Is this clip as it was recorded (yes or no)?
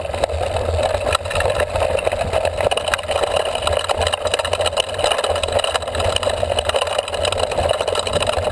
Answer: yes